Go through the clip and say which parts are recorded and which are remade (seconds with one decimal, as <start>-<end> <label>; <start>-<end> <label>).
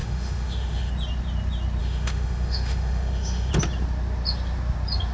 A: 0.0-0.9 remade; 0.9-1.8 recorded; 1.8-3.5 remade; 3.5-5.1 recorded